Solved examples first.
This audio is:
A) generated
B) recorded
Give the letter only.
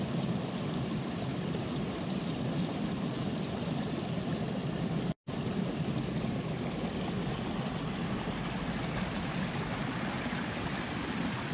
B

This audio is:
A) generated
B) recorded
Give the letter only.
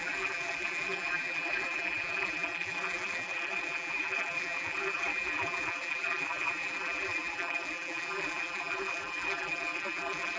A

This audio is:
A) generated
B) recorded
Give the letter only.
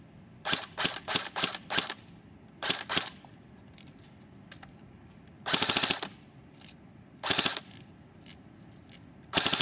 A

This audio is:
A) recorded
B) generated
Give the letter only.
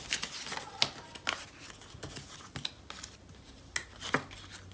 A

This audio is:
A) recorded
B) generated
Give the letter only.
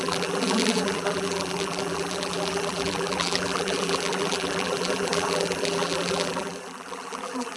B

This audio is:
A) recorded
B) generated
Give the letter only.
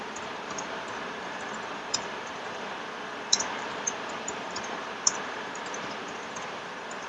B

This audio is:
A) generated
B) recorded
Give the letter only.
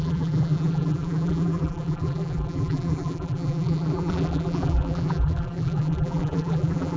A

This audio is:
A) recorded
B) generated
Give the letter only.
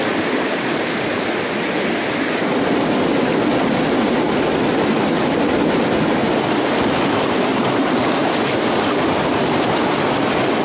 A